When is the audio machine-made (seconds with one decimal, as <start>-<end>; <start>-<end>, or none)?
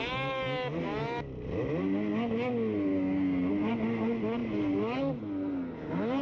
2.9-3.5